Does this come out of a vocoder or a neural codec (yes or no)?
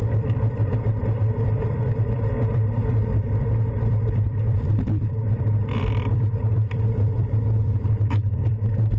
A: yes